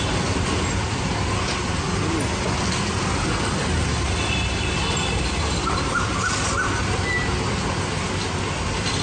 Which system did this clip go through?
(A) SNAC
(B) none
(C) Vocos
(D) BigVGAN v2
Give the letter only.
B